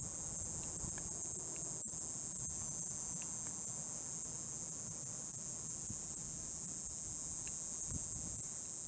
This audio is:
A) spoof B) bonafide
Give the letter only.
B